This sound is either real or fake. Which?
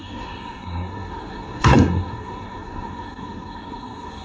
fake